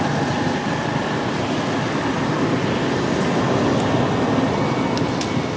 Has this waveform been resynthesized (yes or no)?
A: no